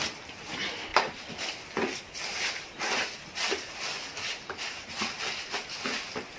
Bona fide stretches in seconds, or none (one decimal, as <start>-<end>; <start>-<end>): 0.0-6.4